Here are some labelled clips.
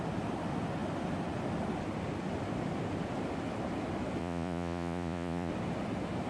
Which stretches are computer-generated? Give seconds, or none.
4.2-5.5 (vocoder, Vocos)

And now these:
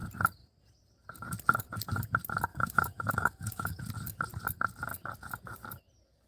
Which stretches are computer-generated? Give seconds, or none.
2.5-3.8 (autoencoder, DAC-VAE)

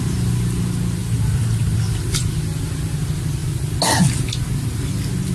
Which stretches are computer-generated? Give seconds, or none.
none

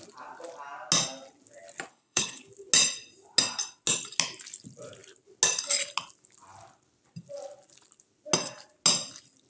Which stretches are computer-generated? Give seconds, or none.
1.9-2.5 (codec, HILCodec)

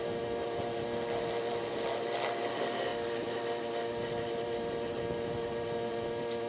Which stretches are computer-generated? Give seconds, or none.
none

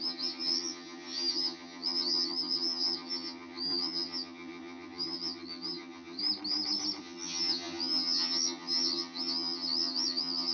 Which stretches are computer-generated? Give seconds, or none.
0.0-6.2 (vocoder, HiFi-GAN); 7.0-10.5

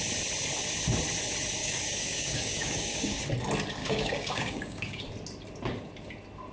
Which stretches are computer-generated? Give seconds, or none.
1.6-3.2 (codec, DAC); 3.8-5.0

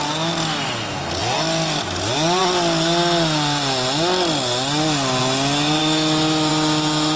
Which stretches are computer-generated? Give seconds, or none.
5.8-6.5 (autoencoder, DAC-VAE)